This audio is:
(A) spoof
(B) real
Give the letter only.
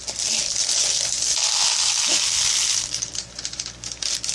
B